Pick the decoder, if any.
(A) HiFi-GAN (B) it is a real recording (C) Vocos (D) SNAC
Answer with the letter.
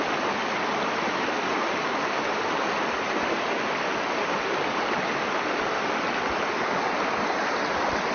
B